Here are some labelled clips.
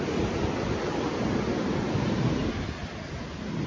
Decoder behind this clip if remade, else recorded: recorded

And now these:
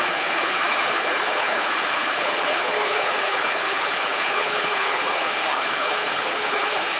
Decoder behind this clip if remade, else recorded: remade, codec, HILCodec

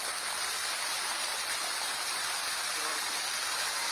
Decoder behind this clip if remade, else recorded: remade, vocoder, BigVGAN v2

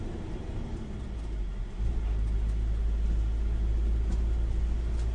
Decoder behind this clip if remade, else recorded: recorded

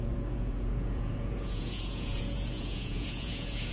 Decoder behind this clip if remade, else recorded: remade, vocoder, Vocos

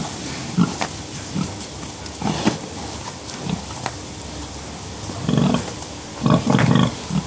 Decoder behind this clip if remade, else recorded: recorded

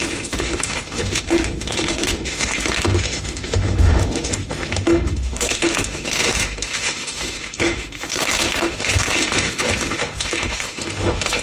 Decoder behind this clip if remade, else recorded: remade, autoencoder, DAC-VAE